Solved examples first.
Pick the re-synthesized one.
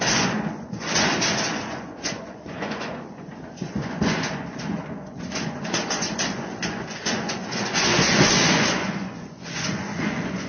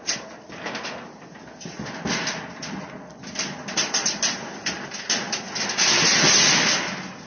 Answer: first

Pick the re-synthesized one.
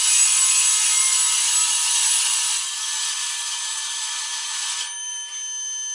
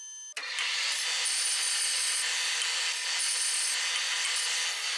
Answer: first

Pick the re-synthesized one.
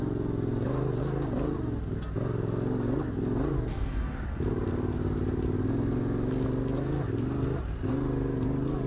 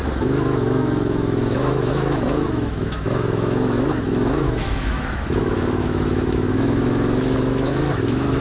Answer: second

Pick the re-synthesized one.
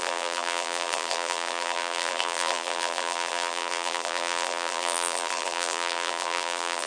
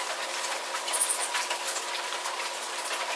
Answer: first